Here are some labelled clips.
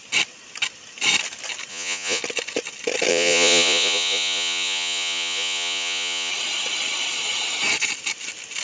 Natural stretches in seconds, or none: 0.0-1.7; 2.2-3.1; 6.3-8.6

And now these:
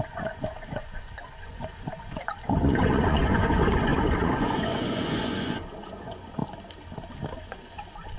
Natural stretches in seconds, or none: 6.4-7.4

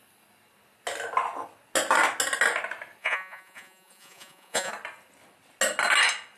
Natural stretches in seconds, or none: 0.0-3.0; 4.7-6.4

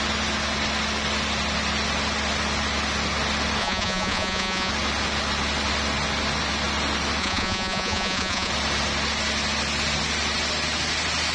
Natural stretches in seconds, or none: 0.0-3.6; 4.7-7.2; 8.5-11.3

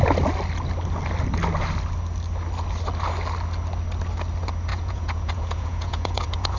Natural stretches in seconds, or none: 0.0-4.7

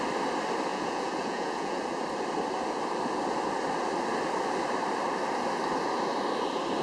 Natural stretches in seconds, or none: 0.0-0.7; 1.8-6.8

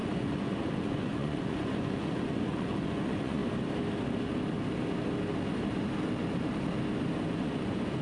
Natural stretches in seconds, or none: 3.4-7.3